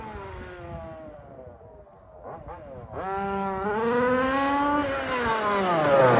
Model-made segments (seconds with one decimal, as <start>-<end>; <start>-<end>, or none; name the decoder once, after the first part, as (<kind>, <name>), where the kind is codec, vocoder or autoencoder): none